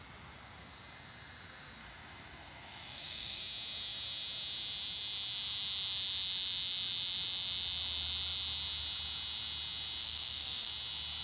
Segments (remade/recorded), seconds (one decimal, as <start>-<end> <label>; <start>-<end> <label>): 0.0-1.8 recorded; 1.8-3.4 remade; 3.4-10.0 recorded; 10.0-10.7 remade; 10.7-11.2 recorded